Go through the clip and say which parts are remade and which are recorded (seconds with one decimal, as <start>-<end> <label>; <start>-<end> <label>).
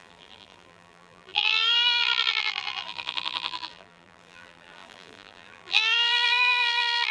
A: 0.0-7.1 remade